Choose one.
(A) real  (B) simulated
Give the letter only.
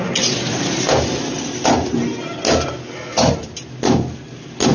A